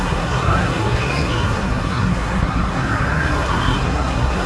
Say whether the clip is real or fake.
fake